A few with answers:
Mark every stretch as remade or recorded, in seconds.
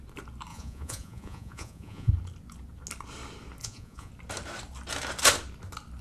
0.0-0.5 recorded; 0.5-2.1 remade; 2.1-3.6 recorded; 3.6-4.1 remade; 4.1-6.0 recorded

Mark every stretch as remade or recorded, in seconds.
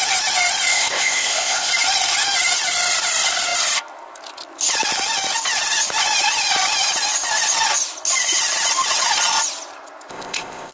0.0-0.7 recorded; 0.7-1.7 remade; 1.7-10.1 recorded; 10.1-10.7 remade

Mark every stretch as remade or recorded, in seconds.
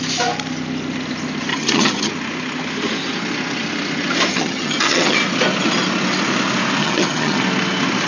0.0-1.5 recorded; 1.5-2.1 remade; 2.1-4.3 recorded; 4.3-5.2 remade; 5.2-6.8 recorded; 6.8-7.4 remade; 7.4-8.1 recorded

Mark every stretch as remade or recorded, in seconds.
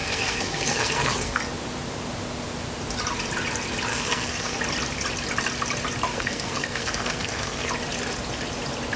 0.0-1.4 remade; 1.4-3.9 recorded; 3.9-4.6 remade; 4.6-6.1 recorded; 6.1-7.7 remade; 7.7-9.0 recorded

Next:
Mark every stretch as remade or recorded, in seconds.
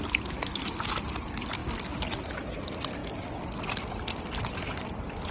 0.0-5.3 recorded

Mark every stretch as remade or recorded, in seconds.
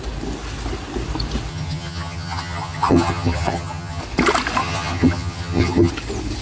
0.0-1.5 recorded; 1.5-4.0 remade; 4.0-4.6 recorded; 4.6-5.9 remade; 5.9-6.4 recorded